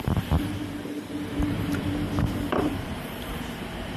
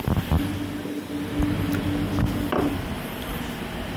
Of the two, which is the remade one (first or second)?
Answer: first